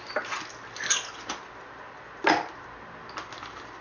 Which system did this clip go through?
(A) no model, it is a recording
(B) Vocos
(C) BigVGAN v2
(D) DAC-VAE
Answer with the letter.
A